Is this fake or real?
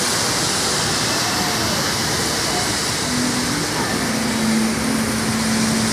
real